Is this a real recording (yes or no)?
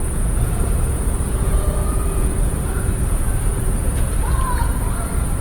no